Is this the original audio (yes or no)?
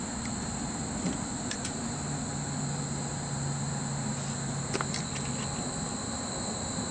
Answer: yes